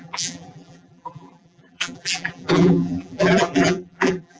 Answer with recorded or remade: remade